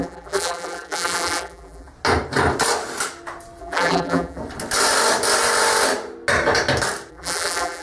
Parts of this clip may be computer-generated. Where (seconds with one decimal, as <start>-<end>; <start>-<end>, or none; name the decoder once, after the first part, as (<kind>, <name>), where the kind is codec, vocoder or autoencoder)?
0.0-1.9 (vocoder, BigVGAN v2); 3.6-4.4; 7.1-7.8